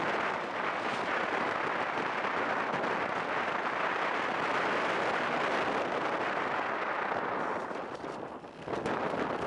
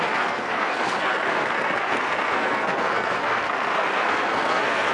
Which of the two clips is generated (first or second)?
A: second